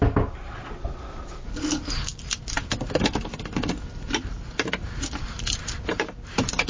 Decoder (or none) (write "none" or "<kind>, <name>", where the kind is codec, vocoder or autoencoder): none